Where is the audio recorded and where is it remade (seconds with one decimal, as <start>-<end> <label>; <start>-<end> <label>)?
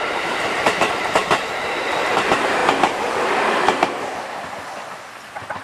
0.0-2.6 remade; 2.6-4.2 recorded; 4.2-5.6 remade